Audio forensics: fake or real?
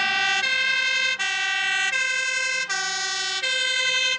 real